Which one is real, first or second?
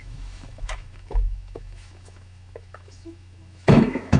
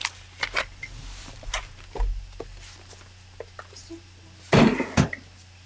second